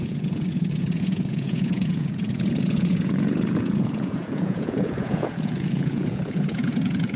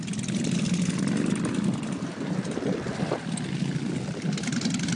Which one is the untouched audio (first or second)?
second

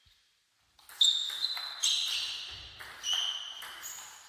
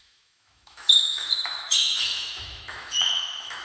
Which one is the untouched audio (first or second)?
first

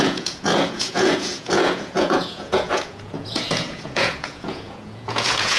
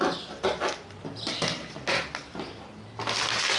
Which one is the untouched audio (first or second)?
second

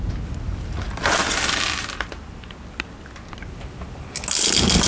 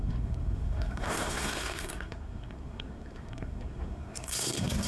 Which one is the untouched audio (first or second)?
first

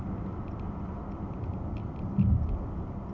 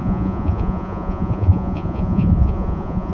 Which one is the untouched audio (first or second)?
first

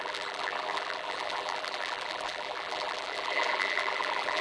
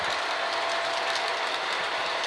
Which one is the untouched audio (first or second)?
second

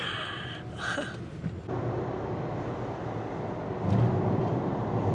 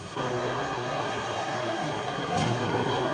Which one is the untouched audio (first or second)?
first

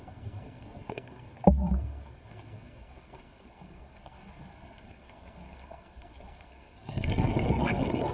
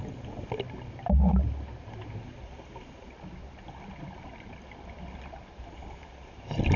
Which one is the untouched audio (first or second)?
second